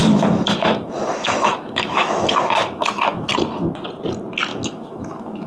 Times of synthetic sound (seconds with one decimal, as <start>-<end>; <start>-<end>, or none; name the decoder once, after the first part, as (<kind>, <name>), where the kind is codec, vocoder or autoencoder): 0.0-3.3 (autoencoder, DAC-VAE); 4.5-5.5